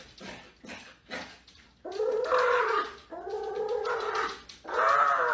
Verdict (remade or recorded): recorded